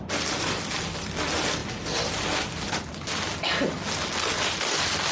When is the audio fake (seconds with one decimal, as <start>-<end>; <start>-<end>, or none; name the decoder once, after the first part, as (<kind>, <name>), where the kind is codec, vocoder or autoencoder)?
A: none